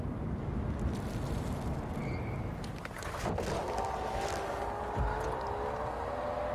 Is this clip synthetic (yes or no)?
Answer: no